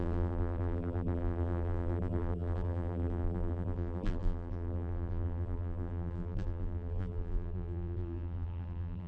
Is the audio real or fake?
fake